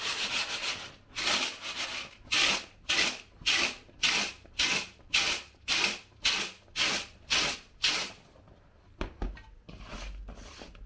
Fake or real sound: real